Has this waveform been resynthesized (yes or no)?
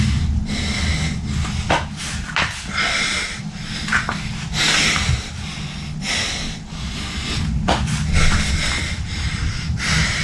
no